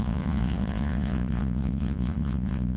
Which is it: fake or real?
fake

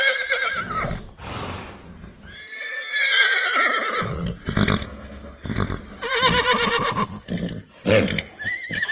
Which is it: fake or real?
real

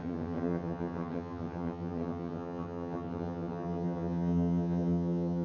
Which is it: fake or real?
fake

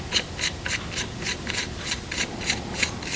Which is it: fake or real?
real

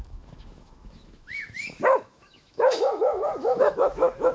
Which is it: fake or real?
fake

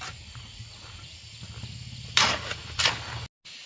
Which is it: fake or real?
real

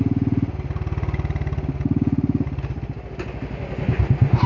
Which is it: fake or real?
real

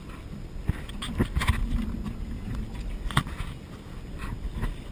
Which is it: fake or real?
real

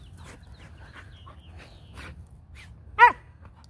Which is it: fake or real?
real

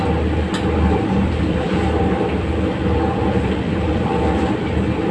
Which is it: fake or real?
fake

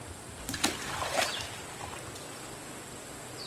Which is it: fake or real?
real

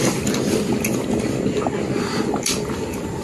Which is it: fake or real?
real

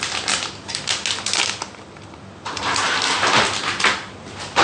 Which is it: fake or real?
real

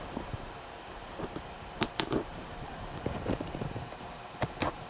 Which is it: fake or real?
fake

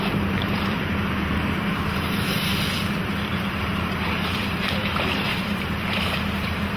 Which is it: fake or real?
fake